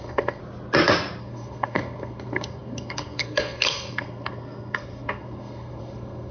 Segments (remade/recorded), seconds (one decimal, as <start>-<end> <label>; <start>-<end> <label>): 0.0-0.4 remade; 0.4-1.2 recorded; 1.2-6.3 remade